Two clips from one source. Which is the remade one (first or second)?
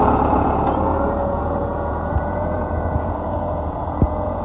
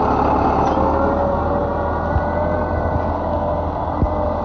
first